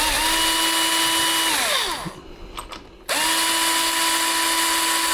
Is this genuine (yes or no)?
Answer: yes